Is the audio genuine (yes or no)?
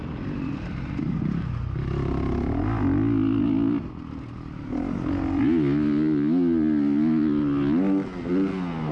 yes